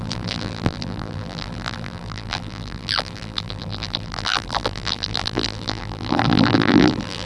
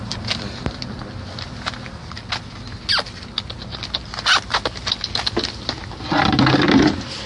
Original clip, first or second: second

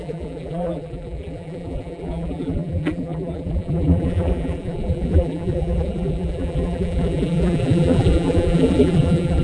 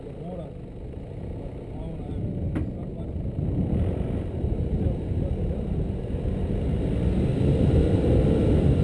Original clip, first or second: second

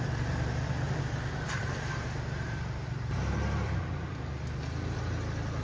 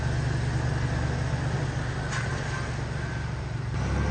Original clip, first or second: second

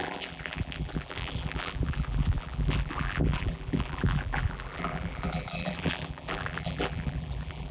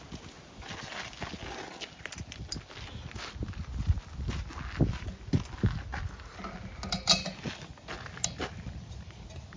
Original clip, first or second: second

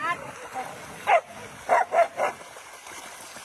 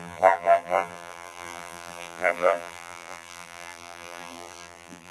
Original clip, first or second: first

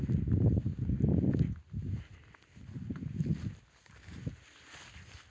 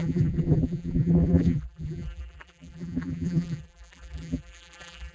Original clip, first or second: first